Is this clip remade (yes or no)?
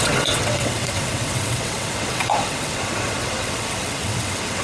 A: yes